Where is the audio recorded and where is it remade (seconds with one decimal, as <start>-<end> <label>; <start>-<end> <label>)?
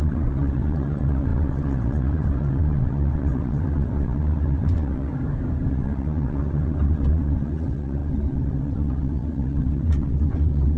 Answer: 0.0-5.1 remade; 5.1-5.7 recorded; 5.7-10.8 remade